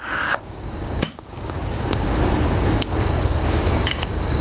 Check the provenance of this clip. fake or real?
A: fake